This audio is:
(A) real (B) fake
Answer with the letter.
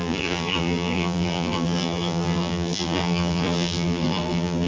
B